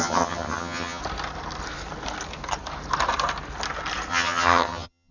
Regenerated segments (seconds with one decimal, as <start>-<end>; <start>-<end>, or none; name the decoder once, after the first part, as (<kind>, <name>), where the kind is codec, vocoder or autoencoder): 0.0-1.0 (vocoder, HiFi-GAN); 4.1-5.1